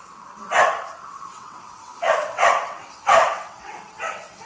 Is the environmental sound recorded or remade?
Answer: remade